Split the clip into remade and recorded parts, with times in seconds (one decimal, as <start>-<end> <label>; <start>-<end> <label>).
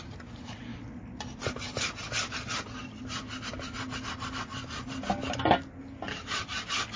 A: 0.0-7.0 recorded